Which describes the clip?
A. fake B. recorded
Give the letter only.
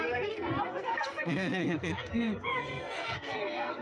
A